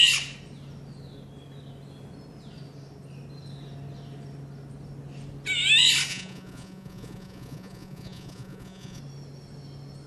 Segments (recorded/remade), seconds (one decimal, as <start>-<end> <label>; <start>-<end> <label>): 0.0-6.1 recorded; 6.1-9.0 remade; 9.0-10.1 recorded